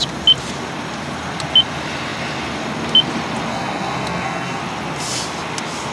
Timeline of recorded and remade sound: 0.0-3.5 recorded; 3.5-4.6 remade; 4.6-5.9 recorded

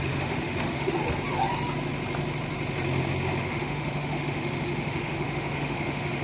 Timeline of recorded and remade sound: 0.0-1.0 remade; 1.0-3.4 recorded; 3.4-6.2 remade

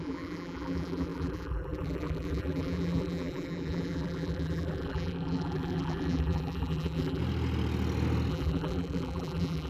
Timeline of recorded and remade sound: 0.0-7.2 remade; 7.2-8.3 recorded; 8.3-9.7 remade

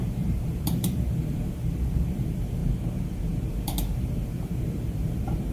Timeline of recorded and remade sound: 0.0-2.6 remade; 2.6-3.5 recorded; 3.5-5.5 remade